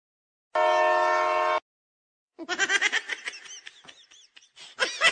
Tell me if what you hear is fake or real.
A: real